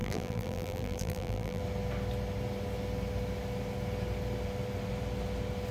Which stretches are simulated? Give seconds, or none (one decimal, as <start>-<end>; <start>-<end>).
0.0-1.6